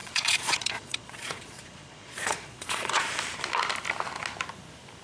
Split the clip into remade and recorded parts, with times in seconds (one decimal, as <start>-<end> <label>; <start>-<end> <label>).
0.0-3.0 remade; 3.0-5.0 recorded